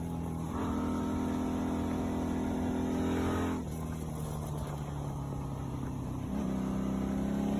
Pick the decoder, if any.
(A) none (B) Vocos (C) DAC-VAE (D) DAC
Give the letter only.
A